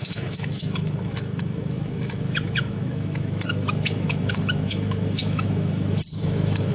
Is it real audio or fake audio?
fake